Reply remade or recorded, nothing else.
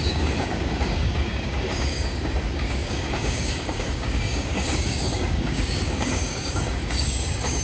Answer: remade